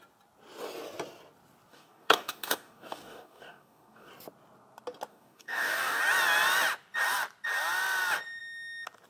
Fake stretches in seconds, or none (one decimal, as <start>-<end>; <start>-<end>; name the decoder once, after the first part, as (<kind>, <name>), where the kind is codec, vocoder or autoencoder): 1.7-4.1 (codec, DAC); 5.1-6.0